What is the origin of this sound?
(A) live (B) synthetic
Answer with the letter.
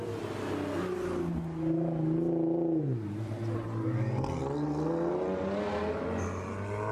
A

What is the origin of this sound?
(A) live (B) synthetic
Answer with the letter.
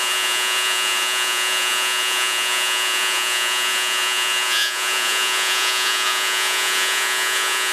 B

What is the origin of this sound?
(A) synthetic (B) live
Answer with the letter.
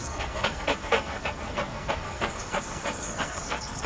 A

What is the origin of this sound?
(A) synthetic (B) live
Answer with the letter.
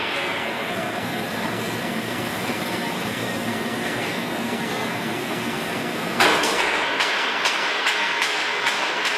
A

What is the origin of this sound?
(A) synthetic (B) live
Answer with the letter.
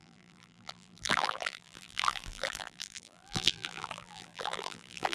A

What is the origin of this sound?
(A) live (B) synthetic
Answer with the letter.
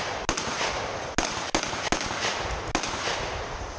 A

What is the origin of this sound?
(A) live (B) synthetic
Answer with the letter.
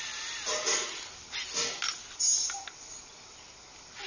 A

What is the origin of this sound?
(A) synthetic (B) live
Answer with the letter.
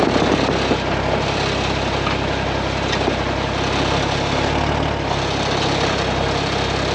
B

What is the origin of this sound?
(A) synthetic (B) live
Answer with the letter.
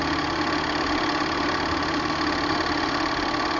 B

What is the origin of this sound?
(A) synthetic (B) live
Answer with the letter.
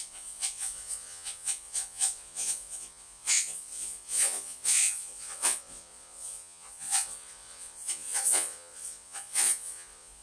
A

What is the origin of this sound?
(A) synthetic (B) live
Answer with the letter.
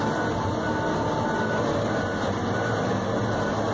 B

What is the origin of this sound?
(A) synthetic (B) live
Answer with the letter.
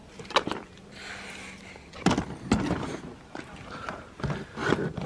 B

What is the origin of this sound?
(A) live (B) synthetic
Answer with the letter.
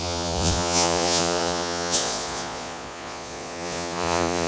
B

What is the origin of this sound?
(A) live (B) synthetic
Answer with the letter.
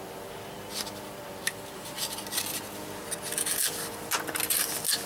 A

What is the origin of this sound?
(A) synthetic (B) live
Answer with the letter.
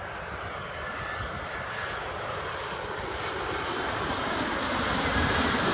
A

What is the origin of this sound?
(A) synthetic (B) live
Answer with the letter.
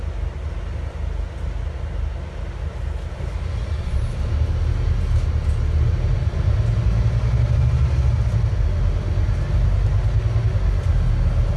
B